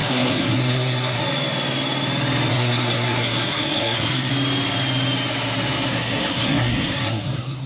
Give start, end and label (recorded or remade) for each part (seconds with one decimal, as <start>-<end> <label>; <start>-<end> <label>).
0.0-1.2 remade; 1.2-2.5 recorded; 2.5-4.3 remade; 4.3-5.9 recorded; 5.9-7.7 remade

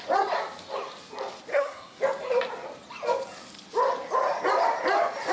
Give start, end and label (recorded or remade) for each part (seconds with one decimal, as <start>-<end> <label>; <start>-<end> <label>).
0.0-1.5 recorded; 1.5-2.0 remade; 2.0-5.3 recorded

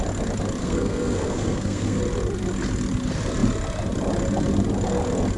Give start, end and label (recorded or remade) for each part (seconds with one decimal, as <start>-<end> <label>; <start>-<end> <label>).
0.0-0.6 recorded; 0.6-2.0 remade; 2.0-5.4 recorded

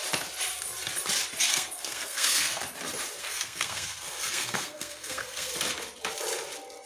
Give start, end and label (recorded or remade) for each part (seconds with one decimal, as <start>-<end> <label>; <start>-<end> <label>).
0.0-1.5 recorded; 1.5-2.6 remade; 2.6-3.2 recorded; 3.2-5.5 remade; 5.5-6.9 recorded